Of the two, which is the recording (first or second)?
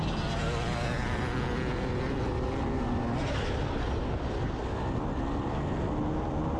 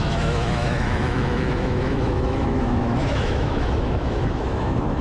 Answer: first